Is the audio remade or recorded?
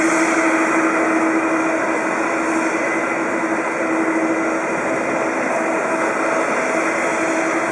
recorded